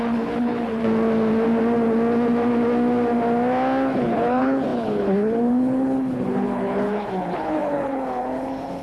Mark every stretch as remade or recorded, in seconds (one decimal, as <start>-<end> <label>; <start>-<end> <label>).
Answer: 0.0-0.8 remade; 0.8-4.0 recorded; 4.0-8.8 remade